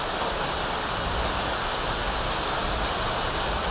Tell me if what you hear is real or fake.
real